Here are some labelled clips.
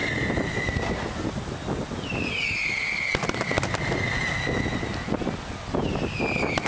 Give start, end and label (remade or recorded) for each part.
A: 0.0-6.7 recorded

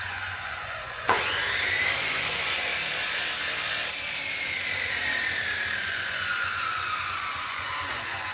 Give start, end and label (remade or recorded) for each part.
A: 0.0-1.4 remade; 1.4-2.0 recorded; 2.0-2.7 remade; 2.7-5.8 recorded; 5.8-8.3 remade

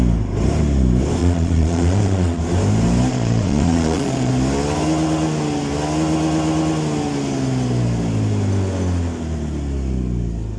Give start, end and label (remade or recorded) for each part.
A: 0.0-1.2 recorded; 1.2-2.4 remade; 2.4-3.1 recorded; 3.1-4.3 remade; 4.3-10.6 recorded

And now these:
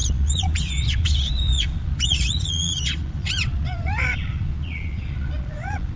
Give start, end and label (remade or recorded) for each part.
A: 0.0-6.0 remade

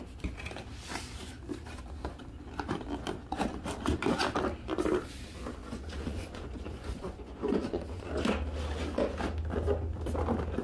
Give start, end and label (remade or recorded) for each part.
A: 0.0-5.6 recorded; 5.6-8.1 remade; 8.1-10.6 recorded

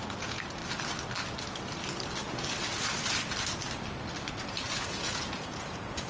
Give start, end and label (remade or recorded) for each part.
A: 0.0-0.6 remade; 0.6-4.3 recorded; 4.3-6.1 remade

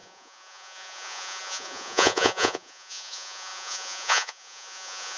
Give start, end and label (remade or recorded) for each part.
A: 0.0-5.2 remade

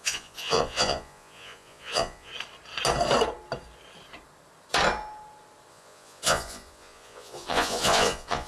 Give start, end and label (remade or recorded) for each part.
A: 0.0-2.3 remade; 2.3-5.7 recorded; 5.7-8.5 remade